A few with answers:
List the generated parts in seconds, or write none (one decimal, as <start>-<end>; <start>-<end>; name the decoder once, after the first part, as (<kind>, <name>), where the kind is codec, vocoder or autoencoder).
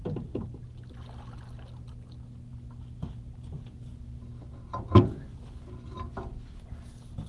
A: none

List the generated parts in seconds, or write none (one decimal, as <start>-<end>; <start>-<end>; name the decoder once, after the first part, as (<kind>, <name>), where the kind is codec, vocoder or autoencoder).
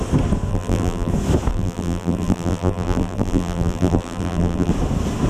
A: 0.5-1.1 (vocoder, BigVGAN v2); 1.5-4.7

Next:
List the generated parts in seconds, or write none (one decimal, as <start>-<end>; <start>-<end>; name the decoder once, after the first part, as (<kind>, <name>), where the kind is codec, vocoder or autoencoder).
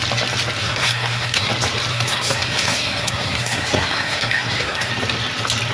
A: 0.6-1.5 (codec, SNAC); 1.9-4.9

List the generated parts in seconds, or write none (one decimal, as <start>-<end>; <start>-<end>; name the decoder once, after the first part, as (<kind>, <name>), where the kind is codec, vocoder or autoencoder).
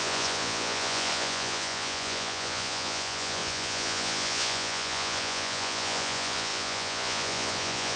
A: 0.0-8.0 (vocoder, Vocos)